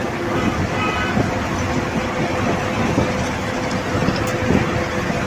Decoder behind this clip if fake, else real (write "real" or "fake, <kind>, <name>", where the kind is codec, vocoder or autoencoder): real